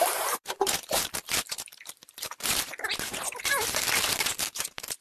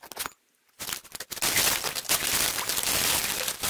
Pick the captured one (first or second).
second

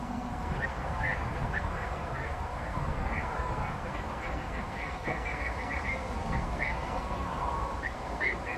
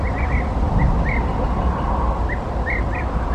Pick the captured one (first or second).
second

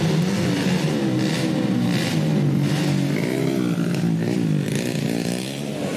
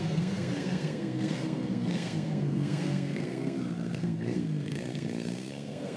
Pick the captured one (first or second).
first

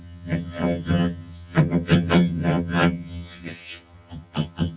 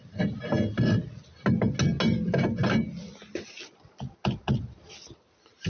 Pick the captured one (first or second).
second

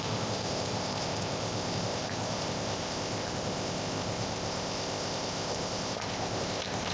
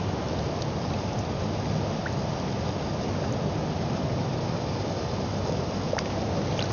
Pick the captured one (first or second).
second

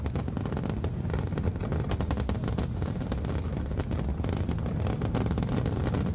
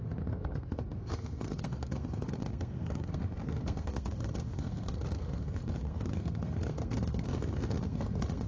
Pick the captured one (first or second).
first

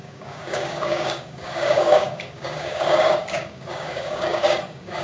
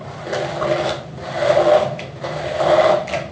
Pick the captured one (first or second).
second